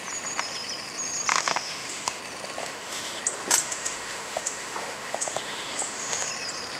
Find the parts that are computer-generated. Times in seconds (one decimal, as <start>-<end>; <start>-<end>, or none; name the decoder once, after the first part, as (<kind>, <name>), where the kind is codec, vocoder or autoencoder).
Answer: 1.3-2.2 (autoencoder, DAC-VAE); 2.6-3.2; 3.6-6.3